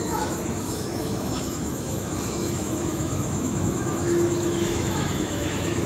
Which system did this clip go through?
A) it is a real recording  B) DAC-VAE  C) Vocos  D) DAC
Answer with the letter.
B